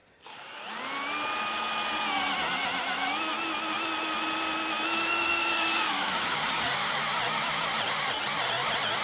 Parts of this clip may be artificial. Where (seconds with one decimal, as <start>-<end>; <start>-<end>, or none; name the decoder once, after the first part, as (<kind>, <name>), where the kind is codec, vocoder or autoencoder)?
4.9-7.0 (codec, DAC)